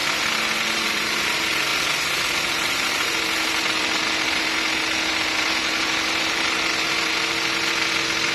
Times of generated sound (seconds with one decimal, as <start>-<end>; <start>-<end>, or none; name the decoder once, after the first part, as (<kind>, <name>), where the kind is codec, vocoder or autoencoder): none